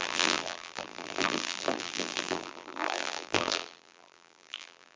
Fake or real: fake